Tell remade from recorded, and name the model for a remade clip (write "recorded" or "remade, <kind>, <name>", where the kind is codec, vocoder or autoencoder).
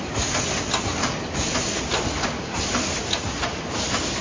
recorded